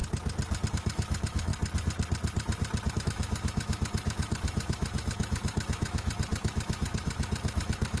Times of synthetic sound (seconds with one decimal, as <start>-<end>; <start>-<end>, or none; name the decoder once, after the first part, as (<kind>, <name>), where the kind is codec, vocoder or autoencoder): 0.7-1.5 (autoencoder, DAC-VAE); 2.9-8.0